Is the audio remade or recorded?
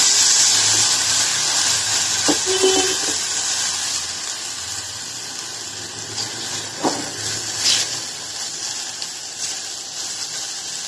recorded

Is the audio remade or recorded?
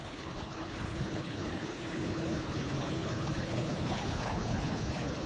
remade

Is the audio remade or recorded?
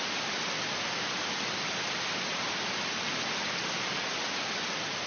recorded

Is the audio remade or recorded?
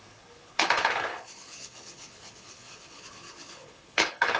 remade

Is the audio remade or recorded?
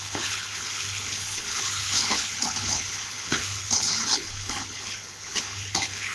remade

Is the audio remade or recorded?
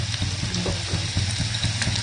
recorded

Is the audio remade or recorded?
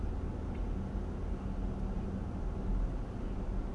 recorded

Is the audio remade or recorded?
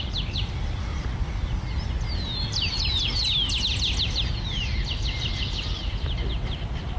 recorded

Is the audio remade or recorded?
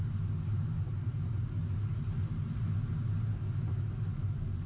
recorded